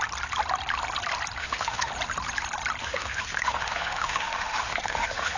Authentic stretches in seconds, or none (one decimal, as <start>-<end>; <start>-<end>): 0.0-1.4; 1.9-2.8